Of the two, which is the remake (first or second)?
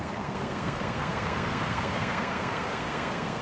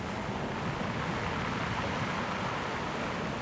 first